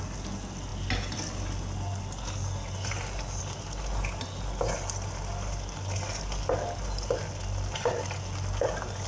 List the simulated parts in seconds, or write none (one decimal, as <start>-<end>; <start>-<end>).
none